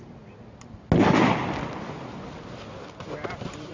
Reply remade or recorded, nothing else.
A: recorded